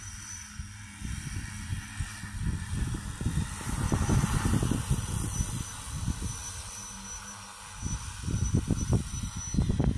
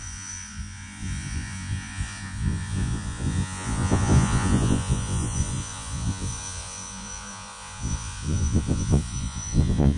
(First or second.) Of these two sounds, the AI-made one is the second